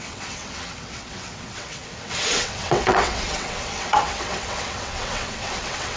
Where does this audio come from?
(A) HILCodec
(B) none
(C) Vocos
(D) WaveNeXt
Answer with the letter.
D